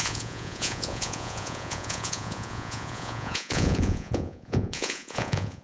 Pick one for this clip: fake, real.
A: fake